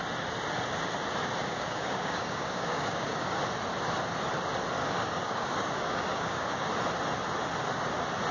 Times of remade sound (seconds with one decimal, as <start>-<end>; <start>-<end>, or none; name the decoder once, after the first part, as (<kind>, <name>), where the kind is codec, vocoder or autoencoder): 1.4-3.4 (codec, DAC); 4.8-6.7